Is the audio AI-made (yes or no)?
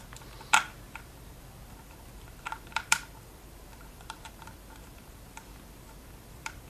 yes